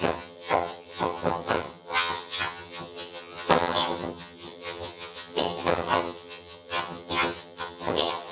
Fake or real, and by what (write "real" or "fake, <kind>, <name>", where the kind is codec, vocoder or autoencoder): fake, vocoder, HiFi-GAN